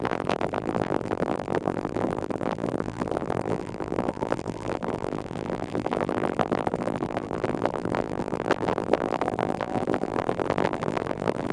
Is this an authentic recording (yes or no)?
no